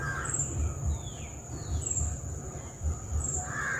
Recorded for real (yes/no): yes